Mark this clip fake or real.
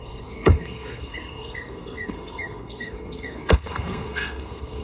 fake